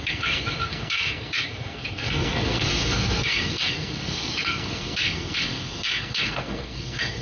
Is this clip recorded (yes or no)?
no